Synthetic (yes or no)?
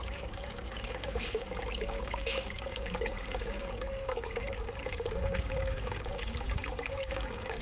yes